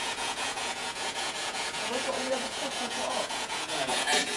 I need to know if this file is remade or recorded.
remade